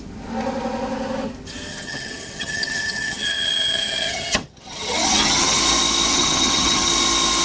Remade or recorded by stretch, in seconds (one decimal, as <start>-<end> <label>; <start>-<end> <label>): 0.0-1.7 recorded; 1.7-5.6 remade; 5.6-6.1 recorded; 6.1-6.9 remade; 6.9-7.4 recorded